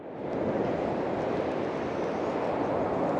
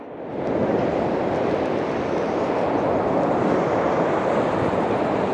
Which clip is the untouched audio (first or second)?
first